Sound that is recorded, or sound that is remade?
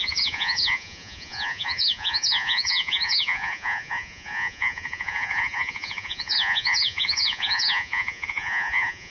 remade